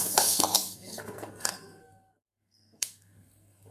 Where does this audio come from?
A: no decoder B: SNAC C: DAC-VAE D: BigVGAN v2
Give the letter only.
B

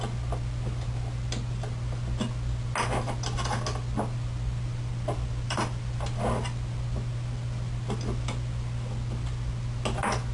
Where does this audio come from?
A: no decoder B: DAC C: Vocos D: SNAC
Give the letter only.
A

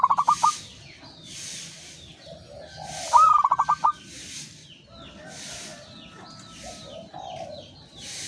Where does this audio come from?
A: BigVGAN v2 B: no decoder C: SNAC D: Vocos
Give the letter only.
B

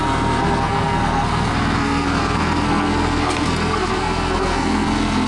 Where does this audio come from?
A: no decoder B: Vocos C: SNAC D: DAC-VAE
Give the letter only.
C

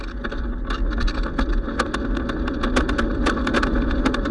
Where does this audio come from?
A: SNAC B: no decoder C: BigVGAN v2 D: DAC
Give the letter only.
B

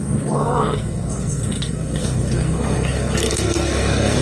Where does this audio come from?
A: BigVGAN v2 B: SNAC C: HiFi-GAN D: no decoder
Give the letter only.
B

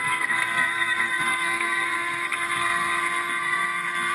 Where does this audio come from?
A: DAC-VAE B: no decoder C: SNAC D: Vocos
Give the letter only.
C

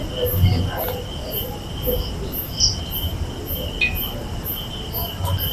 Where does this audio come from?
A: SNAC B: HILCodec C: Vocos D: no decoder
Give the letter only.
D